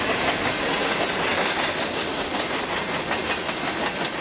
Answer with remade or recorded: recorded